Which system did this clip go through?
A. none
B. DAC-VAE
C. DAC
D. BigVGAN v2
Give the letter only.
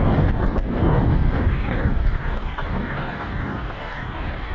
C